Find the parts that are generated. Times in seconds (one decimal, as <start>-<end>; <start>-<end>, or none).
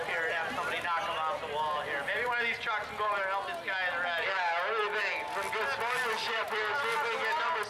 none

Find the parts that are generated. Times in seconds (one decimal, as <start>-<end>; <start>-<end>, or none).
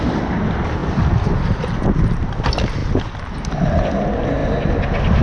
none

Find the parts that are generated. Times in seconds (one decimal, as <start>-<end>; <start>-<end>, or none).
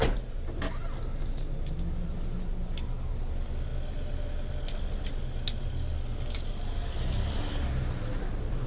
none